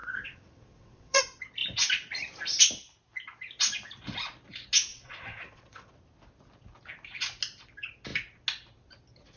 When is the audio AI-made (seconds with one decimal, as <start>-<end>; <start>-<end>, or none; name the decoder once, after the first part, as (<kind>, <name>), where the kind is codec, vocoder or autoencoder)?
0.0-1.2 (vocoder, WaveNeXt); 4.9-5.9